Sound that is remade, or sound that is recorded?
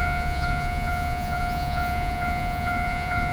remade